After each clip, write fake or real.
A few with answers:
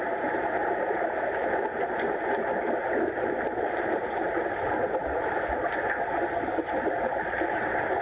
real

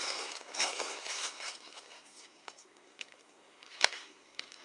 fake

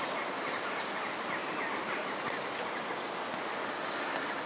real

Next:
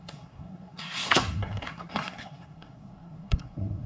fake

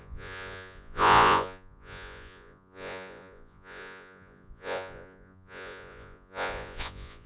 fake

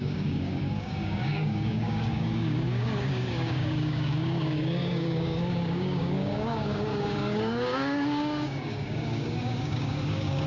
fake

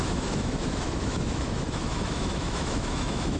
fake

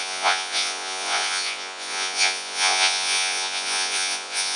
fake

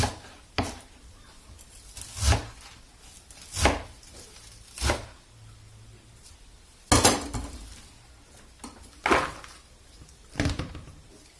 real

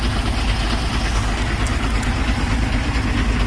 real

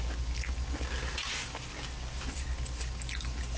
real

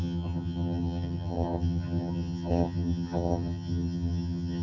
fake